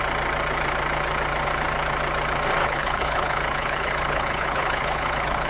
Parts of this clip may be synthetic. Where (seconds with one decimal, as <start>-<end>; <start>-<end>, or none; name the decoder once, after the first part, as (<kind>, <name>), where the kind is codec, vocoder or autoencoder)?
2.6-5.5 (codec, HILCodec)